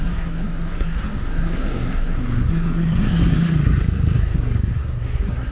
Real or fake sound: fake